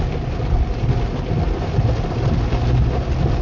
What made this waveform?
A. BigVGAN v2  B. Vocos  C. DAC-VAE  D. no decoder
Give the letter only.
D